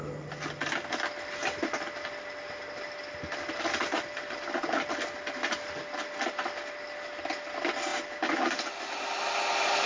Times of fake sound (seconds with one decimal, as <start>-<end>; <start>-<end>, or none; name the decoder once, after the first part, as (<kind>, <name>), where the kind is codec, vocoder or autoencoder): none